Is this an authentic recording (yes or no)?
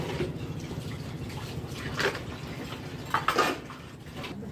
yes